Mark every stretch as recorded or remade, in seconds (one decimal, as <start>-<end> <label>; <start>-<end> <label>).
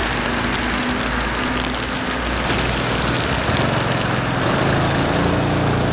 0.0-5.9 recorded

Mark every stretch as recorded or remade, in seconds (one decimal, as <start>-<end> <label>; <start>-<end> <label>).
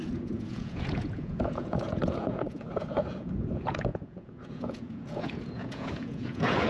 0.0-6.7 remade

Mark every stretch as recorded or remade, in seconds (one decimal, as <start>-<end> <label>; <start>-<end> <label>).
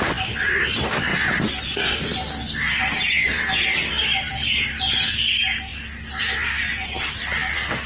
0.0-7.9 recorded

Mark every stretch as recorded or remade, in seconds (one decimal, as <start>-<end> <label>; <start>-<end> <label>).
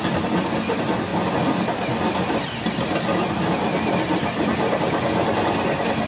0.0-6.1 recorded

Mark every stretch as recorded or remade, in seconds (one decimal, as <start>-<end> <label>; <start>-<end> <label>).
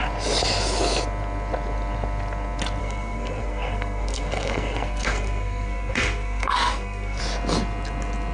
0.0-2.8 recorded; 2.8-7.2 remade; 7.2-8.3 recorded